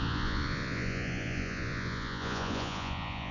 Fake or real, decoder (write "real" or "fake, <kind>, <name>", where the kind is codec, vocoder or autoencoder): fake, vocoder, Vocos